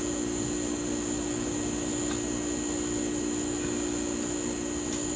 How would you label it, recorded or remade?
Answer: recorded